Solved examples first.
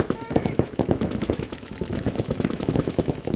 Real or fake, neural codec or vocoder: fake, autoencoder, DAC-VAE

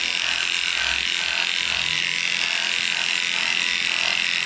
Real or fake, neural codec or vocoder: real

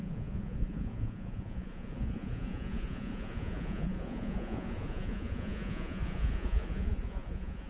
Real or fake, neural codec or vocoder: fake, vocoder, Vocos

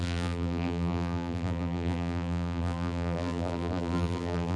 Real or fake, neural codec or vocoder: fake, vocoder, BigVGAN v2